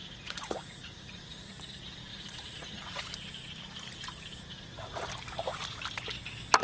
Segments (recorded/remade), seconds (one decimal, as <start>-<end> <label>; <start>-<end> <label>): 0.0-1.5 remade; 1.5-2.1 recorded; 2.1-3.0 remade; 3.0-4.5 recorded; 4.5-5.1 remade; 5.1-6.6 recorded